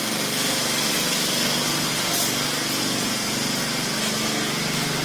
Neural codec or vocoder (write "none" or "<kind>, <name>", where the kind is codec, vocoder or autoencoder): none